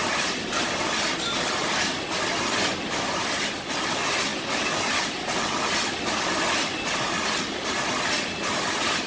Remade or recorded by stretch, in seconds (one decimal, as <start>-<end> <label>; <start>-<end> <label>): 0.0-9.1 recorded